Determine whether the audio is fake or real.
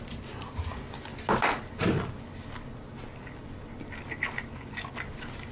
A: real